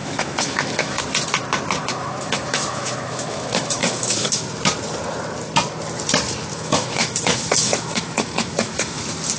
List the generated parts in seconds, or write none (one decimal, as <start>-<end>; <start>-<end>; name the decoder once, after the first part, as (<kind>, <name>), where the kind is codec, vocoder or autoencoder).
0.0-1.0 (autoencoder, DAC-VAE); 1.8-4.4; 6.5-9.0